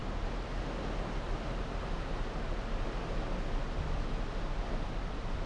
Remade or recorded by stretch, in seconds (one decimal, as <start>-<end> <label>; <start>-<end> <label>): 0.0-4.6 recorded; 4.6-5.5 remade